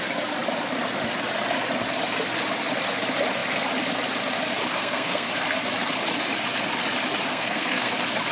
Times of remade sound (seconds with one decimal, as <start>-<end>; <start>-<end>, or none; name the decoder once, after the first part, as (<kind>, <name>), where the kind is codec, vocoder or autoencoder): 4.7-5.3 (codec, SNAC); 7.3-7.9